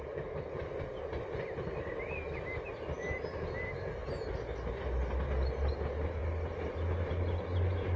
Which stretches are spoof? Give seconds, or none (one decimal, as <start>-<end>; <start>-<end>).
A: none